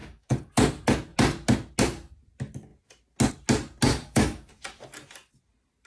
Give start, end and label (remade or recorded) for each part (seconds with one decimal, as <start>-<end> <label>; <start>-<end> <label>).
0.0-0.5 remade; 0.5-3.9 recorded; 3.9-4.5 remade; 4.5-5.9 recorded